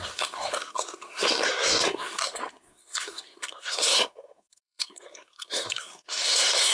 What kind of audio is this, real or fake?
fake